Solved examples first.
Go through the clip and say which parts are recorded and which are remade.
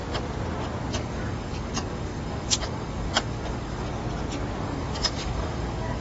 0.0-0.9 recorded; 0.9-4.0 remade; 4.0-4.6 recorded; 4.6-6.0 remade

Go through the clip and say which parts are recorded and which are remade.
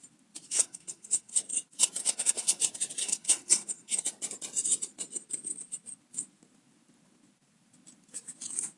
0.0-0.5 recorded; 0.5-1.4 remade; 1.4-2.0 recorded; 2.0-2.6 remade; 2.6-3.0 recorded; 3.0-4.0 remade; 4.0-8.8 recorded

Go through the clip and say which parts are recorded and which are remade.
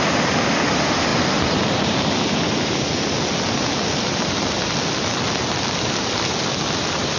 0.0-7.2 recorded